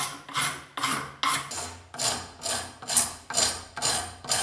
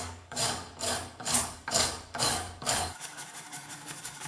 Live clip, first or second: first